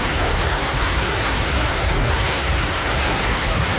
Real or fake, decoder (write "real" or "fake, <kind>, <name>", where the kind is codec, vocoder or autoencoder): fake, codec, SNAC